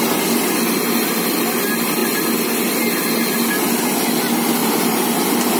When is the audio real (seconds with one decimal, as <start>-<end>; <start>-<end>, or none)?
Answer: 0.0-4.6

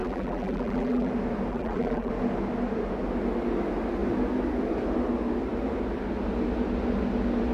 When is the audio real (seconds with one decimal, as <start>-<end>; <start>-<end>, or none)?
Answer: 1.1-1.5; 2.1-7.5

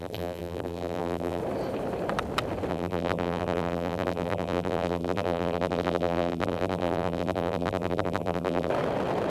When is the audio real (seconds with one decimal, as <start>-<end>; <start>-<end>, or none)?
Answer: 1.4-2.7; 8.7-9.3

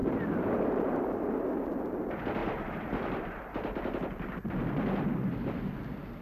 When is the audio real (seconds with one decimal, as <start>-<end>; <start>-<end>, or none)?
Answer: 1.5-2.4; 3.4-6.2